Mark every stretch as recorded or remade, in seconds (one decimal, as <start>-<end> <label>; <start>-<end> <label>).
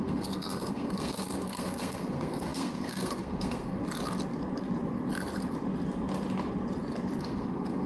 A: 0.0-3.8 remade; 3.8-7.2 recorded; 7.2-7.9 remade